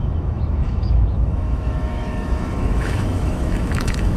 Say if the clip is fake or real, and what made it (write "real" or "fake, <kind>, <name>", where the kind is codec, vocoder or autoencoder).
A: fake, autoencoder, DAC-VAE